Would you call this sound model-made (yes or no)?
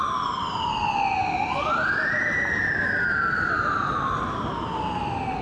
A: no